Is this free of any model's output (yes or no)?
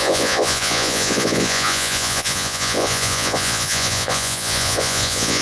no